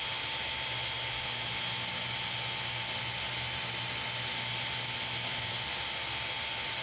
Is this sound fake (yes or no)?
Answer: no